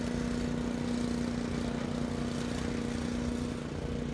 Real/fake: real